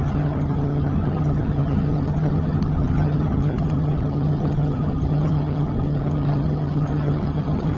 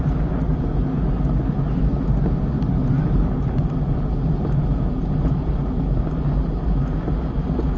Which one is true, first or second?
second